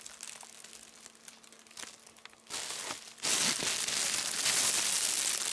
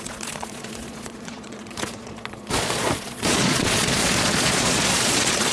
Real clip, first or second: first